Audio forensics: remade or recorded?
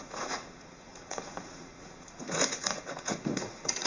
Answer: remade